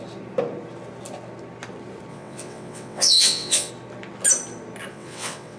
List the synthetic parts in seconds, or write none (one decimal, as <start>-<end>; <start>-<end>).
2.1-3.7; 4.9-5.6